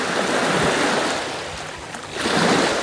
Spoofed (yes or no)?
no